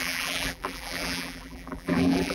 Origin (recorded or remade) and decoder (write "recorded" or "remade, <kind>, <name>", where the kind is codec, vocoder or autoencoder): remade, vocoder, BigVGAN v2